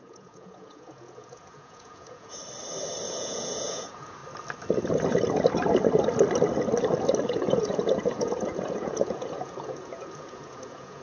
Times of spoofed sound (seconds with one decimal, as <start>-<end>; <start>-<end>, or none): 0.0-2.4; 3.1-4.2; 7.2-11.0